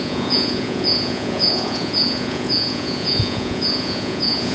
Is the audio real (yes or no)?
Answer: no